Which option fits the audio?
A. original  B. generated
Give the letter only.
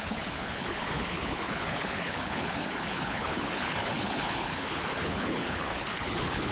B